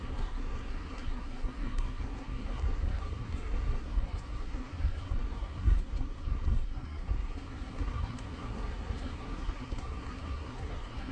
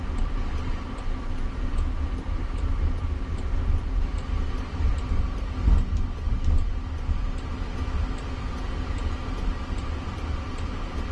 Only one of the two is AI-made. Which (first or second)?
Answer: first